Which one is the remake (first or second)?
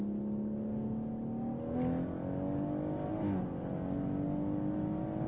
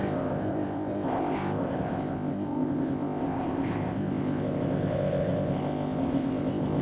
second